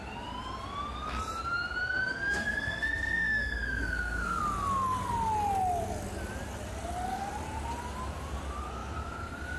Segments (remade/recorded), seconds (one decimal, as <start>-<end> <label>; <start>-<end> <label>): 0.0-1.8 recorded; 1.8-4.4 remade; 4.4-9.6 recorded